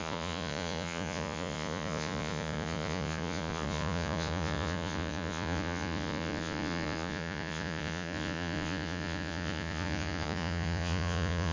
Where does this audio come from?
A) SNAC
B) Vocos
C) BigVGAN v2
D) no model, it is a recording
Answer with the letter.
B